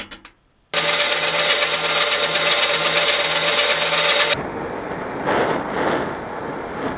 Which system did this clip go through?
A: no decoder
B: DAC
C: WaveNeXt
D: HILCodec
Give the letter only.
A